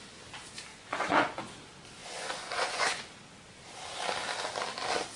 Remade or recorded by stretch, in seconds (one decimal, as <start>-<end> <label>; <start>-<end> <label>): 0.0-0.7 recorded; 0.7-1.4 remade; 1.4-2.0 recorded; 2.0-3.0 remade; 3.0-5.2 recorded